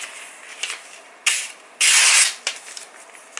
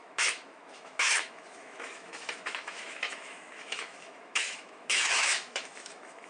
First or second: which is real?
first